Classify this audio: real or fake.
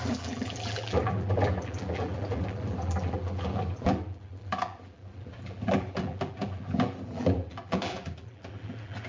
fake